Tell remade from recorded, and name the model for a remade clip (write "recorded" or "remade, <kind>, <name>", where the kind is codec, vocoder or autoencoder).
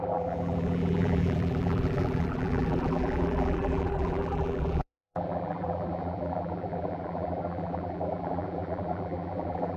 remade, vocoder, BigVGAN v2